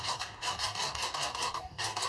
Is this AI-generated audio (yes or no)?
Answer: yes